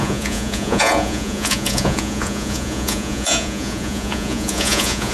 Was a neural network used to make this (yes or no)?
yes